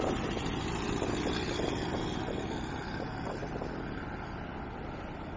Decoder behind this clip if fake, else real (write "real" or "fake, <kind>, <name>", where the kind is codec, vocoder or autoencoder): real